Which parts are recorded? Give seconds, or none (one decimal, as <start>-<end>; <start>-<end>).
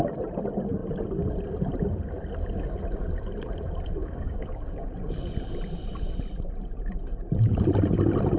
0.0-4.0; 4.9-8.4